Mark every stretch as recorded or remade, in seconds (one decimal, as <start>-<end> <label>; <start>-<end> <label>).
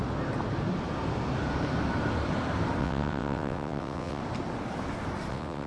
0.0-2.8 recorded; 2.8-4.2 remade; 4.2-5.3 recorded; 5.3-5.7 remade